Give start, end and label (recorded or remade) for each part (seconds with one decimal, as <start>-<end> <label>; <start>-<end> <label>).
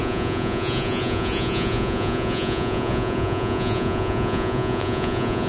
0.0-5.5 remade